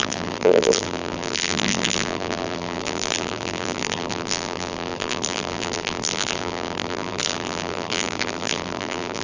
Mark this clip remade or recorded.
remade